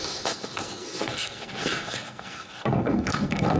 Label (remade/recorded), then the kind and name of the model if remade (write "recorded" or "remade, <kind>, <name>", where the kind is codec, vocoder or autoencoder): remade, codec, SNAC